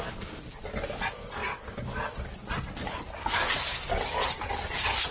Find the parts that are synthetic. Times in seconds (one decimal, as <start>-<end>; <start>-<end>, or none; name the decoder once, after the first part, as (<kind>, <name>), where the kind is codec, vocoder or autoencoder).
none